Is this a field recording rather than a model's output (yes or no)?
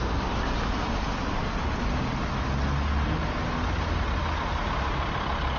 yes